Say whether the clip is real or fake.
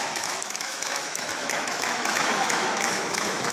fake